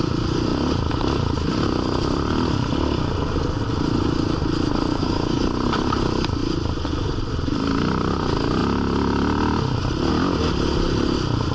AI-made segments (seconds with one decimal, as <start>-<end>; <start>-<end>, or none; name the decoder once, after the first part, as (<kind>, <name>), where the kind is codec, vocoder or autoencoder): 4.9-5.4 (codec, DAC)